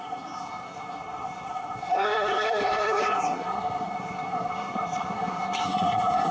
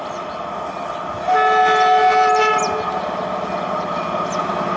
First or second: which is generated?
first